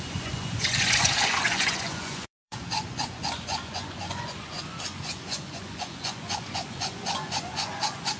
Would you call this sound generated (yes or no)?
yes